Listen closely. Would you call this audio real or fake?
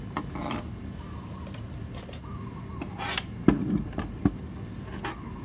real